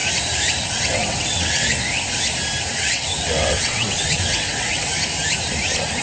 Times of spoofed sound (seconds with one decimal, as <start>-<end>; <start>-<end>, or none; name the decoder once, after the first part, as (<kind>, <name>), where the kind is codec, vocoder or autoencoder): 0.7-1.7 (vocoder, WaveNeXt); 2.7-4.9